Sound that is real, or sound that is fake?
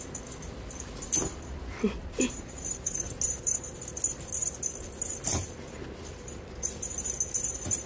real